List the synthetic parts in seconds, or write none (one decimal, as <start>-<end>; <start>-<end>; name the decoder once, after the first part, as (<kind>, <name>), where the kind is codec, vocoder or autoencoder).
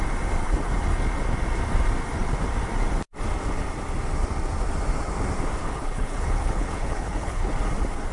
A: 5.6-7.5 (codec, HILCodec)